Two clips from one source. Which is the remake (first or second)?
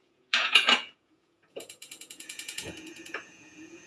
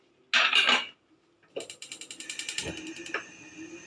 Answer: first